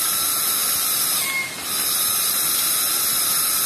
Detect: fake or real real